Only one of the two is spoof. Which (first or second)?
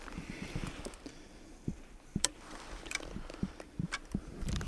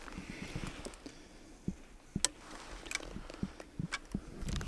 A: first